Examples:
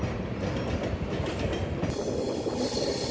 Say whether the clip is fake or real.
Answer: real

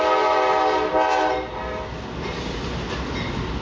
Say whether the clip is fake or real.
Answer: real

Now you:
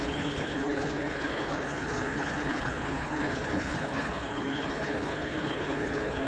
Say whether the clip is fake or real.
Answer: fake